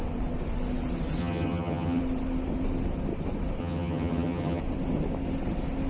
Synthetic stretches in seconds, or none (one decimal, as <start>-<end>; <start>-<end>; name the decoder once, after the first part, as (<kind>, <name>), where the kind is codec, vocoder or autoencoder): 1.2-2.0 (vocoder, HiFi-GAN); 3.6-4.6